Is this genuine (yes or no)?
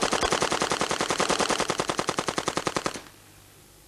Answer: yes